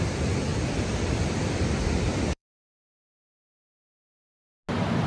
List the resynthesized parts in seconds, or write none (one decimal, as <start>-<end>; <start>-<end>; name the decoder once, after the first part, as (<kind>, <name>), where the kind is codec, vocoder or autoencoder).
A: 0.5-3.3 (vocoder, BigVGAN v2)